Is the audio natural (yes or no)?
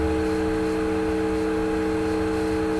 yes